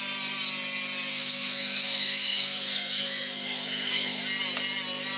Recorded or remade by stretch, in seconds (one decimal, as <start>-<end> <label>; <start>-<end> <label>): 0.0-1.1 recorded; 1.1-4.2 remade; 4.2-5.2 recorded